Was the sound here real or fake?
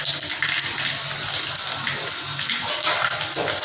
real